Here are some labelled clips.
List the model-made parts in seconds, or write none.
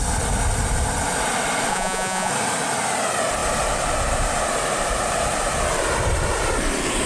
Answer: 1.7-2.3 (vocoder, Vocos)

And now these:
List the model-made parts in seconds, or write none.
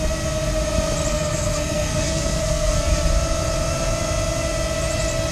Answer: 1.1-2.8 (codec, SNAC)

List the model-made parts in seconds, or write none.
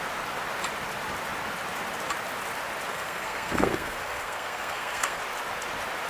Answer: 2.9-5.2 (codec, SNAC)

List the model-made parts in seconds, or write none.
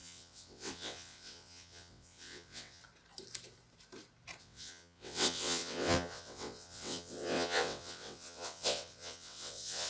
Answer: 0.0-2.8 (vocoder, WaveNeXt); 4.4-9.9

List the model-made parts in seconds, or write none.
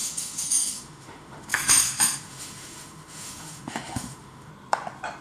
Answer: 0.0-4.5 (autoencoder, DAC-VAE)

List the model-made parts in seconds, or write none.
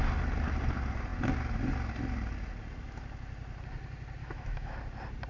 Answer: 4.2-4.7 (autoencoder, DAC-VAE)